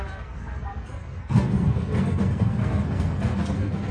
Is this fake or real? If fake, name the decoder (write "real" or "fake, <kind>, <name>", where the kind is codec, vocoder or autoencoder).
fake, codec, SNAC